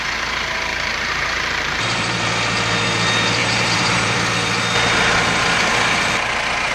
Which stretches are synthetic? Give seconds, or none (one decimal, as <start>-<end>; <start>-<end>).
0.7-2.2; 3.4-4.2

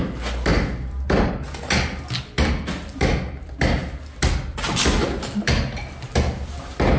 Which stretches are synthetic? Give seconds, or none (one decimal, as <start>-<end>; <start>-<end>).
0.5-1.3